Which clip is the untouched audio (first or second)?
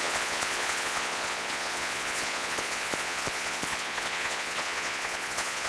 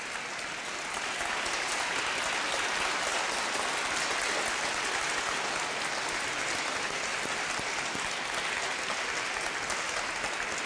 second